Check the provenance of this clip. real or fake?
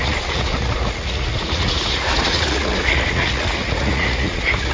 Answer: fake